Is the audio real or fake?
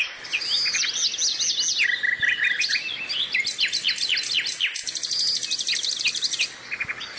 real